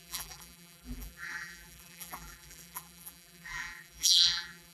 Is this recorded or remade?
remade